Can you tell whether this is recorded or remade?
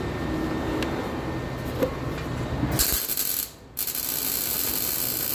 recorded